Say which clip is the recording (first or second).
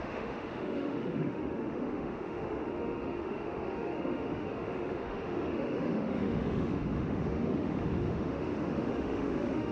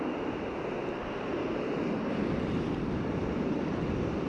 second